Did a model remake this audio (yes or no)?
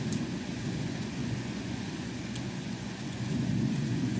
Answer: yes